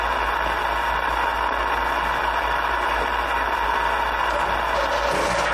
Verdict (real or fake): real